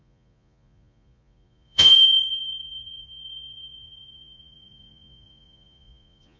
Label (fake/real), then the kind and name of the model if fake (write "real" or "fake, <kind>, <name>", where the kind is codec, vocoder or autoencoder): fake, vocoder, Vocos